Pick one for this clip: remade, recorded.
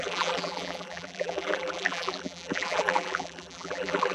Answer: remade